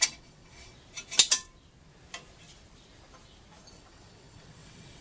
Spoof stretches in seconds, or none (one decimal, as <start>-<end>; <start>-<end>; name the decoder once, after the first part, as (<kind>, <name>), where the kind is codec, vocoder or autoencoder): 0.0-0.7 (vocoder, WaveNeXt); 3.7-5.0